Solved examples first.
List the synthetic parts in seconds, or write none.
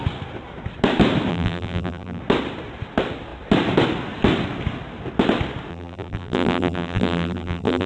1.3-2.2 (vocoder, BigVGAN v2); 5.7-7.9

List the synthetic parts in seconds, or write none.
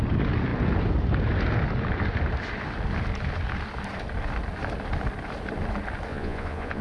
6.1-6.8 (vocoder, Vocos)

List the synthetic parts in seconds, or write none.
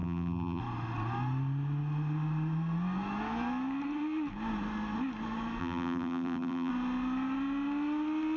0.0-0.6 (vocoder, BigVGAN v2); 5.6-6.7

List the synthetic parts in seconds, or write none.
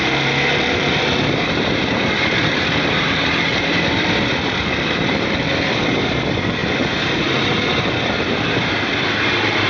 0.0-9.7 (vocoder, BigVGAN v2)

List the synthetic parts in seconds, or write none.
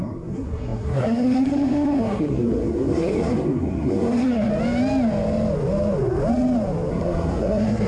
0.0-4.5 (codec, SNAC); 6.9-7.9